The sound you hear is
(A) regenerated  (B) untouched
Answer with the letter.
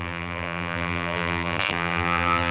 A